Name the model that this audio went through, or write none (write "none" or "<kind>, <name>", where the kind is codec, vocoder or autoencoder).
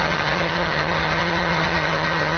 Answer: vocoder, HiFi-GAN